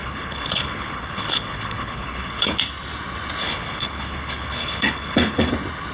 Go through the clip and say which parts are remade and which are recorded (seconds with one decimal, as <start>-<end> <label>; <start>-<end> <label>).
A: 0.0-2.6 remade; 2.6-3.4 recorded; 3.4-5.5 remade; 5.5-5.9 recorded